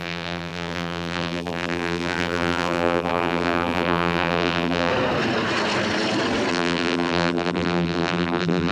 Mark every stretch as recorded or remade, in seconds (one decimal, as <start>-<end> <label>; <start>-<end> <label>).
0.0-4.9 remade; 4.9-6.5 recorded; 6.5-8.7 remade